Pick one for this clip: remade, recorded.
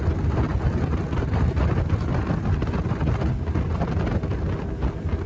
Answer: recorded